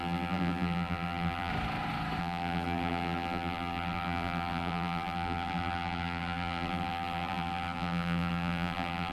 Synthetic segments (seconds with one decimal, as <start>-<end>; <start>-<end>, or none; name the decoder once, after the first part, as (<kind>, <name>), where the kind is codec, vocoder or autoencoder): 0.0-1.5 (vocoder, BigVGAN v2); 2.2-9.1